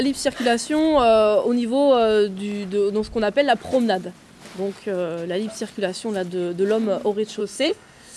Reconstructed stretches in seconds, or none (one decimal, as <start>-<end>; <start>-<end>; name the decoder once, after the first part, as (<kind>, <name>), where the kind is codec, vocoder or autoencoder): 7.4-8.2 (codec, SNAC)